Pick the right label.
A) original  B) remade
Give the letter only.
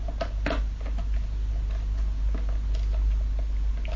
A